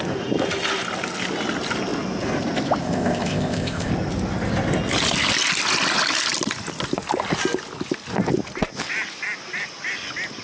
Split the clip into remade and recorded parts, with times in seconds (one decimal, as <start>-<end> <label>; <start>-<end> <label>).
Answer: 0.0-2.8 recorded; 2.8-3.9 remade; 3.9-10.4 recorded